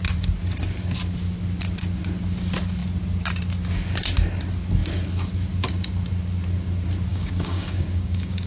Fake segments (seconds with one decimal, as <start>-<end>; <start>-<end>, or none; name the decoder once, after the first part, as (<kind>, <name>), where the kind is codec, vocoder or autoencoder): 7.1-8.5 (codec, DAC)